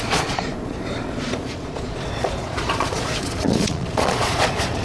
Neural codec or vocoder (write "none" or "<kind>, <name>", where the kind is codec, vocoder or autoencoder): vocoder, Vocos